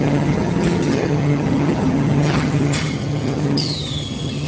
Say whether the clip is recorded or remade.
remade